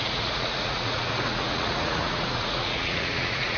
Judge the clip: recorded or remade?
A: remade